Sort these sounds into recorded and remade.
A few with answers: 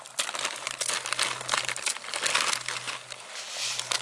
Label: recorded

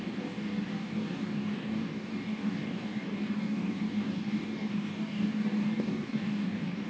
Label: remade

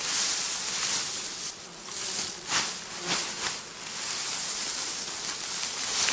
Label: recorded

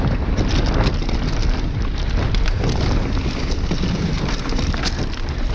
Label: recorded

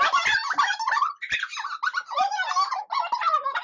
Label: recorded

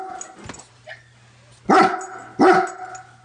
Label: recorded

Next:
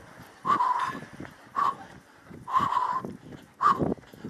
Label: recorded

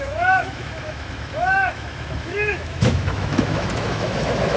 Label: remade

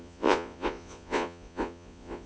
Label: remade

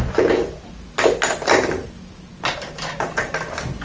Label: recorded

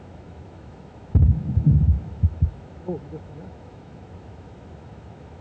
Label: remade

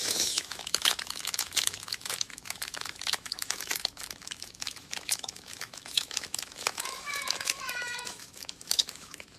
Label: remade